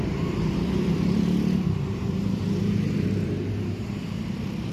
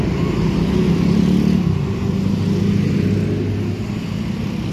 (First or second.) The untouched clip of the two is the second